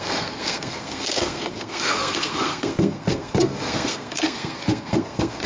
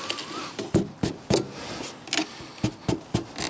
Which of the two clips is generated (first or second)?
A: first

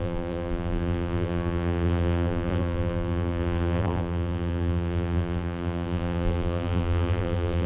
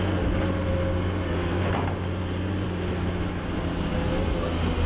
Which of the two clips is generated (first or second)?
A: first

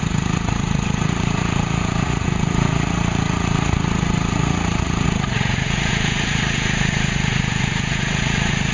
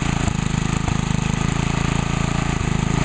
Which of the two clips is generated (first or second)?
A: first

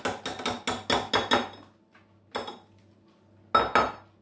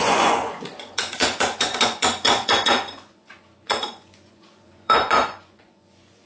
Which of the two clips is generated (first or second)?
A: second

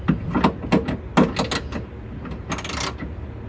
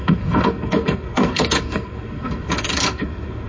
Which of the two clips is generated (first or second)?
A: second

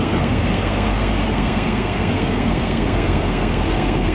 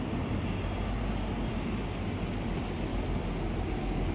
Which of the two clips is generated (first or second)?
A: first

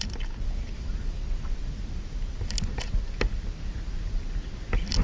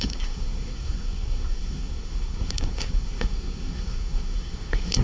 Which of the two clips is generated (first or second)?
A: second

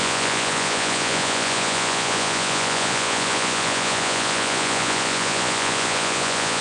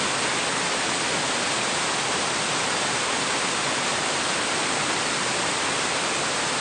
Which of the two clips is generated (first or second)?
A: first